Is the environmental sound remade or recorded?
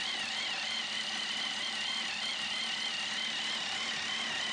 recorded